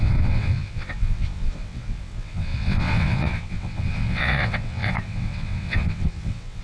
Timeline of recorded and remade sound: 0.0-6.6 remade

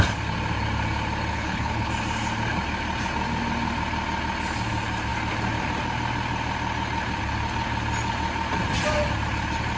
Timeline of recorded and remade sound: 0.0-1.3 recorded; 1.3-1.9 remade; 1.9-9.8 recorded

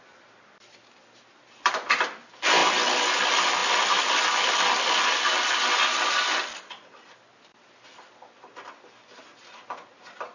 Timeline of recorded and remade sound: 0.0-10.3 recorded

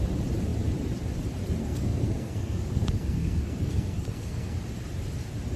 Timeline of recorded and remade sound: 0.0-1.6 recorded; 1.6-4.6 remade; 4.6-5.6 recorded

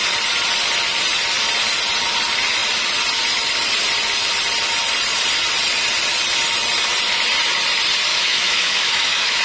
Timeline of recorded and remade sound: 0.0-8.1 recorded; 8.1-9.4 remade

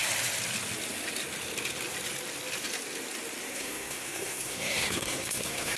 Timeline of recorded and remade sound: 0.0-3.5 recorded; 3.5-5.8 remade

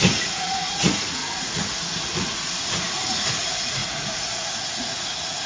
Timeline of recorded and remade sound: 0.0-5.5 remade

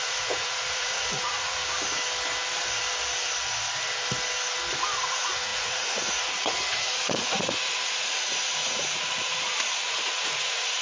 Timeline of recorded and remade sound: 0.0-1.6 remade; 1.6-5.0 recorded; 5.0-10.8 remade